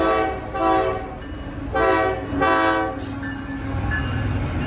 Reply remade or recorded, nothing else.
recorded